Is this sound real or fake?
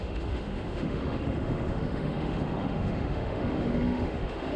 fake